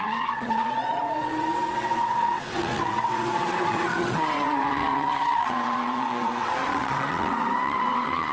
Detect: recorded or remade remade